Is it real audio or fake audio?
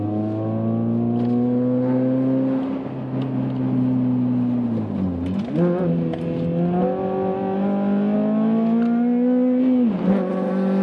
real